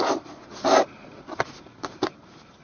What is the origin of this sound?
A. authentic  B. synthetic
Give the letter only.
B